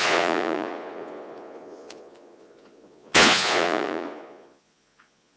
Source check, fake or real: fake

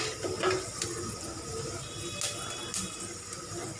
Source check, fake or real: real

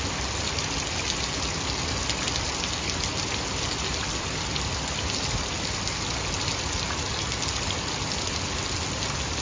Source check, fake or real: real